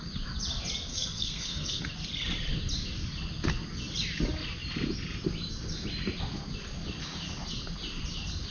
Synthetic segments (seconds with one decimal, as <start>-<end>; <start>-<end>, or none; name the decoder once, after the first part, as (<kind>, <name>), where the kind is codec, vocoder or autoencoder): 0.9-1.8 (codec, SNAC)